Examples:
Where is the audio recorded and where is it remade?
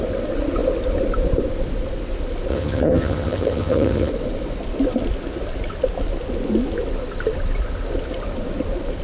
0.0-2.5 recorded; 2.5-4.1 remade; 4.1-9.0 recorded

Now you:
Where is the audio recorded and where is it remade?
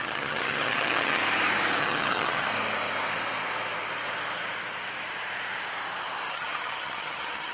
0.0-1.2 remade; 1.2-1.8 recorded; 1.8-2.5 remade; 2.5-6.3 recorded; 6.3-7.5 remade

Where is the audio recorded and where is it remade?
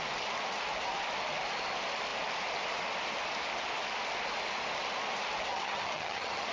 0.0-5.5 recorded; 5.5-6.5 remade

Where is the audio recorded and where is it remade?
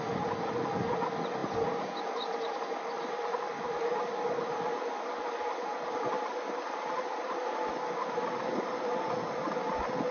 0.0-10.1 recorded